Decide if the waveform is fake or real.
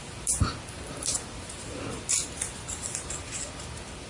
real